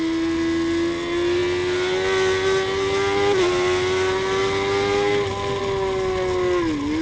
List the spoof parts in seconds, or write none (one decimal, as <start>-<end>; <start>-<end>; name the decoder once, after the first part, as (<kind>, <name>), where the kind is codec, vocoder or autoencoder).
none